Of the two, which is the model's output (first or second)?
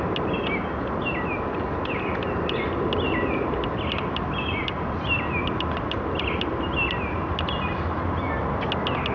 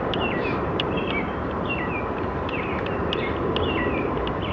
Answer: second